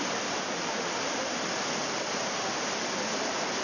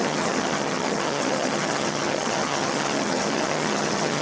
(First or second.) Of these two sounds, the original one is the first